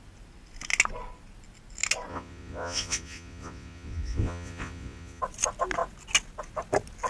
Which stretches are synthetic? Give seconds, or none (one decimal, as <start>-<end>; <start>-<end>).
2.1-5.2